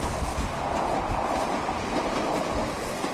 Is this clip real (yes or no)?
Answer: yes